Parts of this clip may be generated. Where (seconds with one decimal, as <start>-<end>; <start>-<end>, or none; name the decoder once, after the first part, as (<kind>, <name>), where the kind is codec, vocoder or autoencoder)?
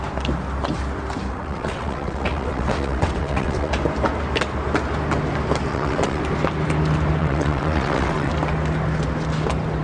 1.3-3.7 (vocoder, WaveNeXt); 5.7-6.2; 7.2-8.3